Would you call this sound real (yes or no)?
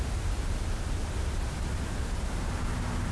yes